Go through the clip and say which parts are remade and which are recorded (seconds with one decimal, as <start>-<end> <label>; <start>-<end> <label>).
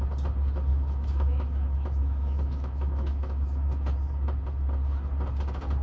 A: 0.0-0.7 recorded; 0.7-3.8 remade; 3.8-5.8 recorded